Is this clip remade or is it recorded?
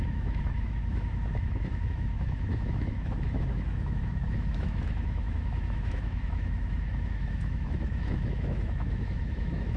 remade